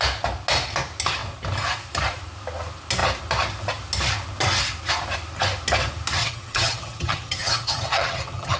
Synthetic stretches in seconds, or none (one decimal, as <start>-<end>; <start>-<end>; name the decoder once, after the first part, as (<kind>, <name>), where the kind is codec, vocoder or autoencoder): 6.2-8.6 (vocoder, HiFi-GAN)